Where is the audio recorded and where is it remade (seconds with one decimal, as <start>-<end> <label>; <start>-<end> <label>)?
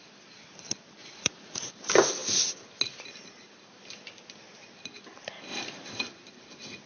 0.0-1.0 recorded; 1.0-1.7 remade; 1.7-6.9 recorded